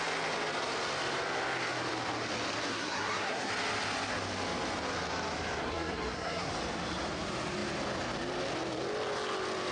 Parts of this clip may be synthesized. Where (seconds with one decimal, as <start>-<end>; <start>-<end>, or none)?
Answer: 2.7-3.5; 5.6-6.5